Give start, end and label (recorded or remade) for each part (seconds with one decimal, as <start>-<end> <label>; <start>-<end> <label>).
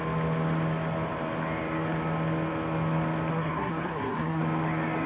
0.0-3.3 recorded; 3.3-4.4 remade; 4.4-5.1 recorded